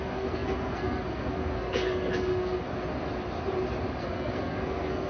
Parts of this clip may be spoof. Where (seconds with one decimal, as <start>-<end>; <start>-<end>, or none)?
0.0-2.7; 4.0-5.1